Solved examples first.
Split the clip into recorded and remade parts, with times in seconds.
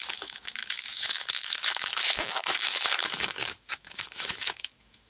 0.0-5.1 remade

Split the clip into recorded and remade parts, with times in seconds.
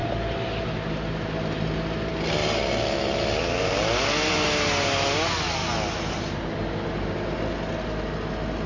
0.0-8.7 recorded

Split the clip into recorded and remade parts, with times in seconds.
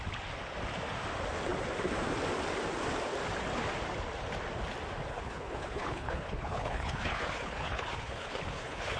0.0-5.1 recorded; 5.1-9.0 remade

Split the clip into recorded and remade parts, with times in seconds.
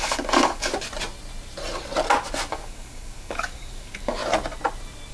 0.0-0.7 remade; 0.7-2.5 recorded; 2.5-4.2 remade; 4.2-5.1 recorded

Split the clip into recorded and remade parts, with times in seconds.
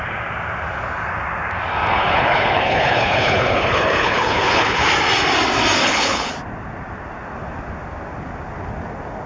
0.0-1.9 recorded; 1.9-4.9 remade; 4.9-5.8 recorded; 5.8-6.3 remade; 6.3-9.3 recorded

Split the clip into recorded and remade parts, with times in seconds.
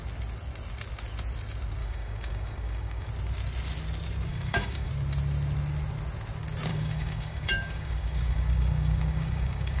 0.0-1.8 recorded; 1.8-3.1 remade; 3.1-4.3 recorded; 4.3-4.9 remade; 4.9-6.7 recorded; 6.7-9.8 remade